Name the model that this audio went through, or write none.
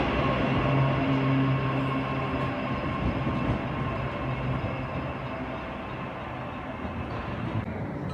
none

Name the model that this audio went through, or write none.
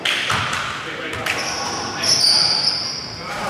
none